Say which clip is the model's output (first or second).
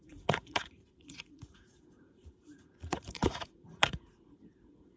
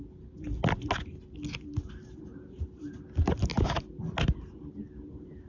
first